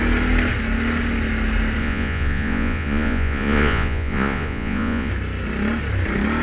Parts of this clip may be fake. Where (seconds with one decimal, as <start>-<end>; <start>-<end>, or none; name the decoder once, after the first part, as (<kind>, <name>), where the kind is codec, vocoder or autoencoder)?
1.8-5.1 (vocoder, Vocos)